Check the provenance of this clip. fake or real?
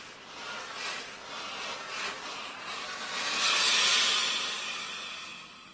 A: real